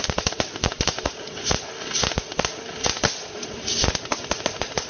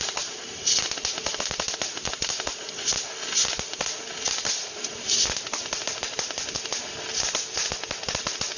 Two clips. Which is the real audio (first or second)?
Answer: second